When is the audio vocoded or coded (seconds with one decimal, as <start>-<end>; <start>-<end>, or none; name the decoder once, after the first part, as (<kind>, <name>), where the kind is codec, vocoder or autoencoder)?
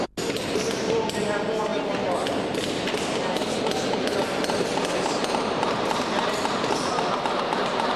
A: none